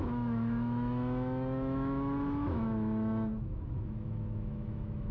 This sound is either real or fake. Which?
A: fake